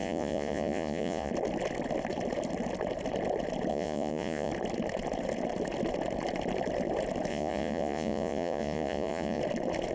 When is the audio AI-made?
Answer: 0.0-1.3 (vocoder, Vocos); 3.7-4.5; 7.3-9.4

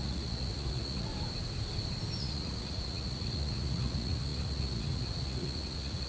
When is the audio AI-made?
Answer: 0.0-1.1 (vocoder, Vocos); 2.2-6.1